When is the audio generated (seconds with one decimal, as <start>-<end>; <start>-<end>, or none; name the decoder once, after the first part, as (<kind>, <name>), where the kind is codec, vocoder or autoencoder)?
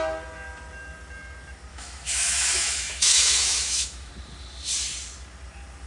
1.7-4.1 (autoencoder, DAC-VAE)